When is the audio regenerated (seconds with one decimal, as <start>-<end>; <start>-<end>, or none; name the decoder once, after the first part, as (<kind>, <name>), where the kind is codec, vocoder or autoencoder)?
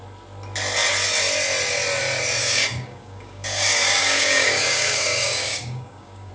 2.4-6.3 (codec, DAC)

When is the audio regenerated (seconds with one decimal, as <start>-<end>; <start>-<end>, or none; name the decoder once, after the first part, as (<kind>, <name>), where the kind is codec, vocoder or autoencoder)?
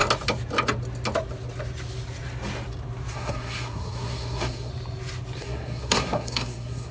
3.1-4.7 (codec, SNAC); 5.4-6.9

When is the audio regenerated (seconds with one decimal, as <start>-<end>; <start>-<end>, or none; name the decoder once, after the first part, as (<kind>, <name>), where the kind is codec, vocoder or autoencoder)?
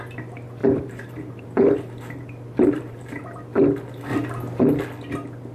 0.6-3.2 (vocoder, BigVGAN v2)